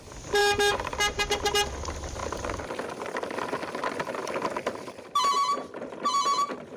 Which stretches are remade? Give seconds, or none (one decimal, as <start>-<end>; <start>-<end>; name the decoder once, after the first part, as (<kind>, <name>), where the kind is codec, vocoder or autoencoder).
0.4-1.3 (vocoder, BigVGAN v2)